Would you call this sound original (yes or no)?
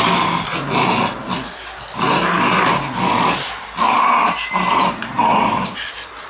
yes